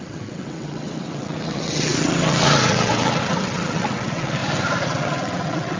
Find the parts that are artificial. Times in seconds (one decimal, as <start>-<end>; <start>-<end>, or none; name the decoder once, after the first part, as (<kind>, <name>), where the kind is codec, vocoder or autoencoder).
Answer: 0.0-4.4 (vocoder, WaveNeXt); 4.9-5.8